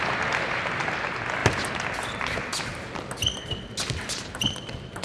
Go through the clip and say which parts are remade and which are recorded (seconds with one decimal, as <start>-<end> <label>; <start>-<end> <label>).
0.0-5.0 recorded